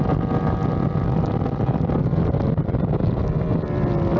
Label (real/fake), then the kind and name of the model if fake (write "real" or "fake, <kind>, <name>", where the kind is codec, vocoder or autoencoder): real